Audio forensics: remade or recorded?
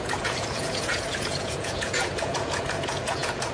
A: remade